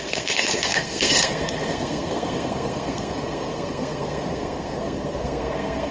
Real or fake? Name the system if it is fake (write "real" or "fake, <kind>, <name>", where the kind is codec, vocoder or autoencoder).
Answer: fake, codec, SNAC